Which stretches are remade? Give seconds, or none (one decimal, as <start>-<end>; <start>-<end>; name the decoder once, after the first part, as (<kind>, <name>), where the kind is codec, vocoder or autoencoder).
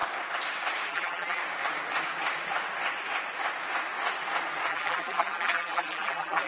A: 0.9-1.4 (vocoder, BigVGAN v2); 4.7-6.5